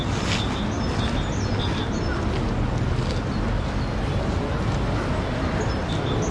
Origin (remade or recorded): recorded